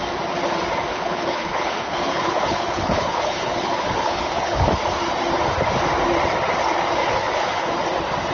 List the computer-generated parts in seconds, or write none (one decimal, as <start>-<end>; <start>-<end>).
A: 0.9-4.8; 7.0-7.7

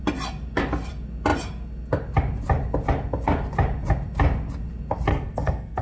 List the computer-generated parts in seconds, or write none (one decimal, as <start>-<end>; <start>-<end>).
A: 5.1-5.8

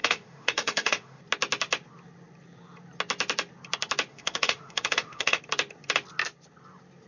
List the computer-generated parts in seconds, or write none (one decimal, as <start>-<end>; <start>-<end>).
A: 0.0-1.2; 4.1-5.4

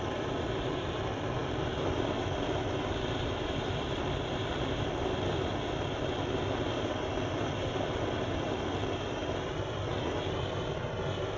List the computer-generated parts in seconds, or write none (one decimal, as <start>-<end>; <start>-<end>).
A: none

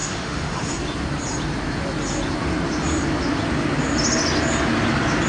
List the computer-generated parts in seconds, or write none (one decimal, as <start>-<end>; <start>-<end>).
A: 0.0-0.7